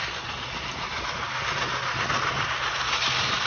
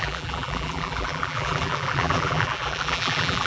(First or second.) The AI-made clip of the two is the second